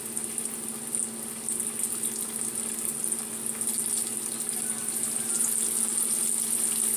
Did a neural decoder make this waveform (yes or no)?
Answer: no